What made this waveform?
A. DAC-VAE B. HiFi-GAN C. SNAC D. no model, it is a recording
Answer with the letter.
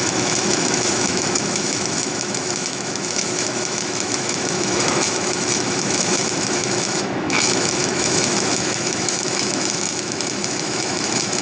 A